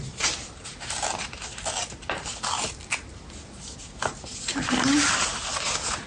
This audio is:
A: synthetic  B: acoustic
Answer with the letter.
B